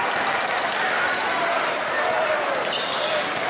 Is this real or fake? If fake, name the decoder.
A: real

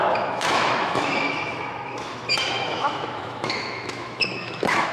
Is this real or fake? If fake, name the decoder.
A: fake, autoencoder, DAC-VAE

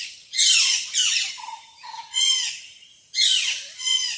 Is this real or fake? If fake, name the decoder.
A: fake, vocoder, Vocos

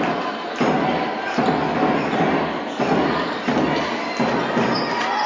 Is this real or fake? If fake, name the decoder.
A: real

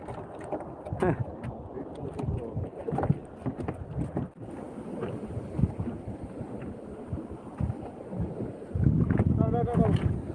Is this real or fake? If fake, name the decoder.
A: real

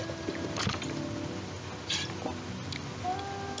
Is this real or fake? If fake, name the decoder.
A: real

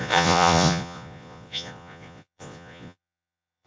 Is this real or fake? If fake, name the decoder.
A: fake, vocoder, Vocos